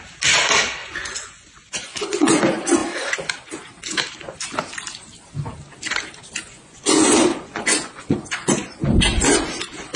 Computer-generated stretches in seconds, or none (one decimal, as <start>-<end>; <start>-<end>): 0.8-2.4; 6.4-8.7